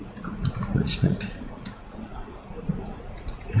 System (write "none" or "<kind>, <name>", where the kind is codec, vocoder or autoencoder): vocoder, Vocos